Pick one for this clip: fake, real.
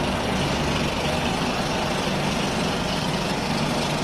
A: real